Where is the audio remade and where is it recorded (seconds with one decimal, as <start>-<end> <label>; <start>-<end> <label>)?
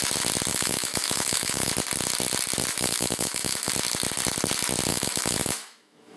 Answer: 0.0-0.5 recorded; 0.5-1.7 remade; 1.7-2.7 recorded; 2.7-3.7 remade; 3.7-4.9 recorded; 4.9-6.2 remade